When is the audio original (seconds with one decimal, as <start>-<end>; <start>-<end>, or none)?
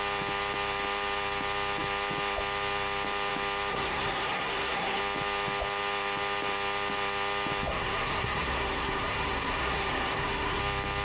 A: 0.0-3.7; 5.0-7.7; 10.6-11.0